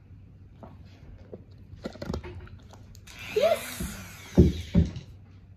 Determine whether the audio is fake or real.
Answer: real